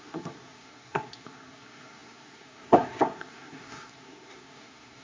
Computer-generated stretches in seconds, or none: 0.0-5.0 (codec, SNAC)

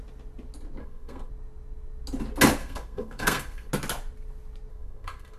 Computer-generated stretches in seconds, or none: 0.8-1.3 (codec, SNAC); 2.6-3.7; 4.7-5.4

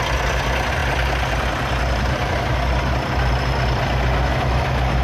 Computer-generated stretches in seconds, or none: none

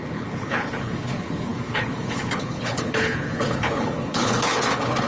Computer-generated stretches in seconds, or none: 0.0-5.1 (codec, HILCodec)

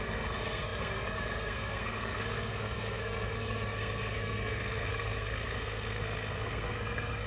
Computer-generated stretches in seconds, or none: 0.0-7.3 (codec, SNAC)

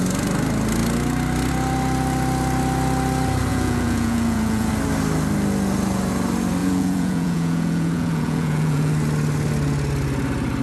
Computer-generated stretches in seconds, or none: 3.5-4.7 (vocoder, Vocos); 6.6-8.9

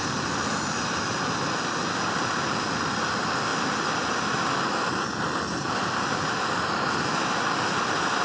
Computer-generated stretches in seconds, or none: none